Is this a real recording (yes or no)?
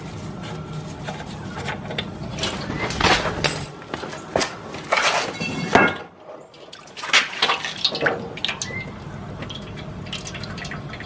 yes